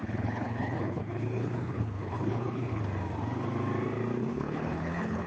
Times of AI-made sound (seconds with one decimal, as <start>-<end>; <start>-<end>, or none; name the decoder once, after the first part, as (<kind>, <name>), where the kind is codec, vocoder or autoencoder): 0.0-2.8 (codec, HILCodec); 4.2-5.3

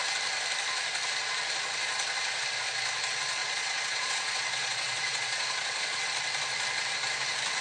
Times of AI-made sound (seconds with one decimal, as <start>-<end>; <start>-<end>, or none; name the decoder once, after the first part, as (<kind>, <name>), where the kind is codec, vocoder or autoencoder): 3.4-6.0 (vocoder, Vocos)

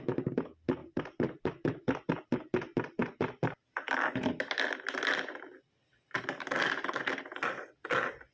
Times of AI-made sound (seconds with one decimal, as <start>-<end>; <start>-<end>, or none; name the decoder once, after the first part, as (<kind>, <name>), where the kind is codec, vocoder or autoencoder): 0.8-1.5 (vocoder, BigVGAN v2)

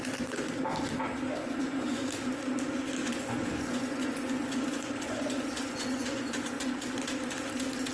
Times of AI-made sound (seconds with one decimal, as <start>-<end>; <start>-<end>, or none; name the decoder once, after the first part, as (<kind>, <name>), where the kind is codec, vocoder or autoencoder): 1.4-2.0 (vocoder, Vocos); 3.0-6.7

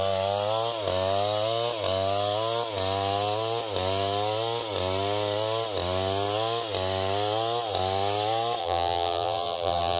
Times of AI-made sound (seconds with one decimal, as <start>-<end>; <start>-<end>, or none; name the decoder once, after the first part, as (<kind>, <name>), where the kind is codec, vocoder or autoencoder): 8.6-10.0 (vocoder, BigVGAN v2)